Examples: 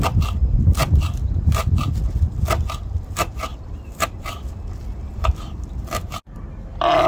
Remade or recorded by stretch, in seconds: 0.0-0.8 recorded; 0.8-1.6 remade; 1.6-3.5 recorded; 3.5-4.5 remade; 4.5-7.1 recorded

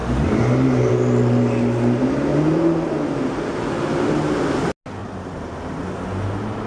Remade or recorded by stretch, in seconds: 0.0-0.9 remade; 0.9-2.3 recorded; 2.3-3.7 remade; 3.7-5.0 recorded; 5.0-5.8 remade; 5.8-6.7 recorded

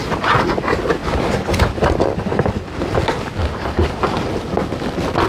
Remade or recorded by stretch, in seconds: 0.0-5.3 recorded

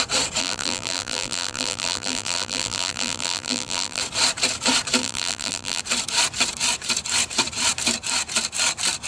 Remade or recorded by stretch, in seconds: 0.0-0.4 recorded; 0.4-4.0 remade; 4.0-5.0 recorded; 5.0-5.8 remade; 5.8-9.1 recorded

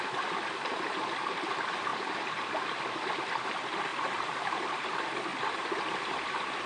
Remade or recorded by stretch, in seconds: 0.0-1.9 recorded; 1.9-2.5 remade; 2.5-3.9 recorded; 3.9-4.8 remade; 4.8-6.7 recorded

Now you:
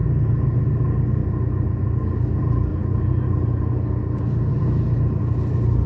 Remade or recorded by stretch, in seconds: 0.0-0.6 remade; 0.6-1.2 recorded; 1.2-1.9 remade; 1.9-2.7 recorded; 2.7-3.6 remade; 3.6-4.5 recorded; 4.5-5.2 remade; 5.2-5.9 recorded